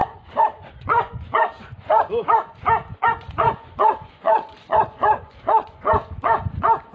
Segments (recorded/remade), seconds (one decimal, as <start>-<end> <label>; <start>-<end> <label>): 0.0-6.9 remade